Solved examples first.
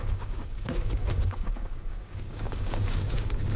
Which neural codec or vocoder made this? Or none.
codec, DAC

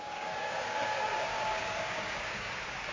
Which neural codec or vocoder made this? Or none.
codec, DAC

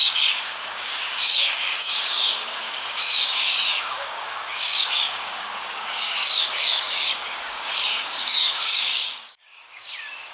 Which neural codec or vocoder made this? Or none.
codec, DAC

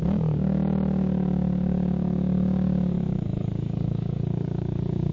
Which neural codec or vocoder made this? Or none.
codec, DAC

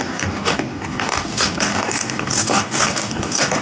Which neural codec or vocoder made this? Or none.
codec, DAC